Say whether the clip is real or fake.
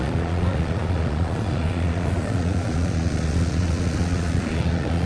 fake